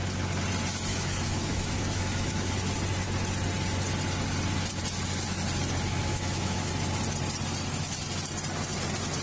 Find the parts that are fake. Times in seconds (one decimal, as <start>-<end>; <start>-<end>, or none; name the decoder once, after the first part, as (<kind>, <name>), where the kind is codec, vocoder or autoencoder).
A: 0.9-2.5 (autoencoder, DAC-VAE); 5.9-6.7